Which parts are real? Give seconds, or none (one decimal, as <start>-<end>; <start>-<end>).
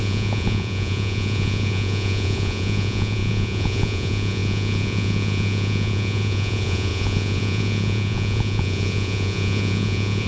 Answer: none